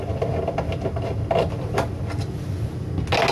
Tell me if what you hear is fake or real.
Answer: real